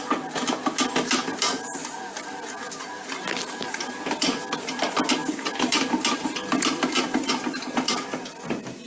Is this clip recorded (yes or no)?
yes